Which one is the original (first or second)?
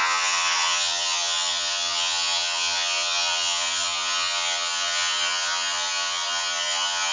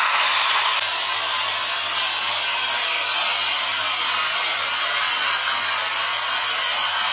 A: second